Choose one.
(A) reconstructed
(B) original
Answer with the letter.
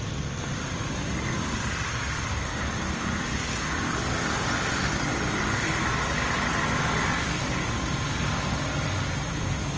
B